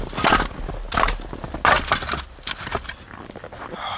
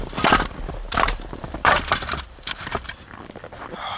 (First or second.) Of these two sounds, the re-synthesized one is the second